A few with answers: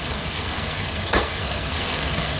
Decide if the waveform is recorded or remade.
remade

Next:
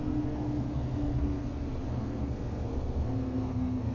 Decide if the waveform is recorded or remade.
remade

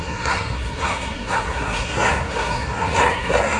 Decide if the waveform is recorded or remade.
remade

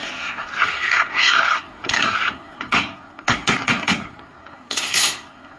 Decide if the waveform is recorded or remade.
remade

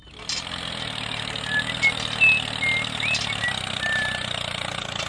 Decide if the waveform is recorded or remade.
recorded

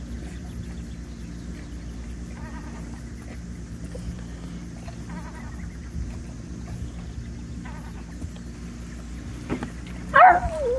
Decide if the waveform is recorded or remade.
recorded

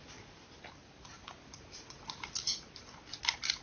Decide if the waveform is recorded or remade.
recorded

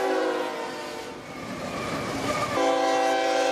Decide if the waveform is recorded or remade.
recorded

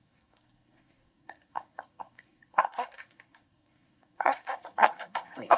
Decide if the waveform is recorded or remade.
remade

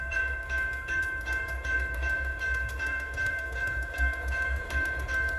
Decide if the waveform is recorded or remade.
remade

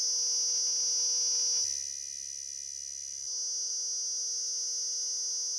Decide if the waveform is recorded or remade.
recorded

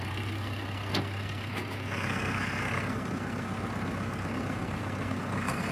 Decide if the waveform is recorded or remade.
remade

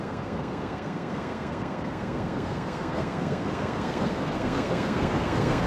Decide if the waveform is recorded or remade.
remade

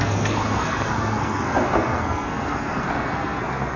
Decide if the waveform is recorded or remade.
remade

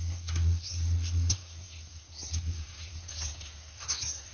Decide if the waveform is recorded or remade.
remade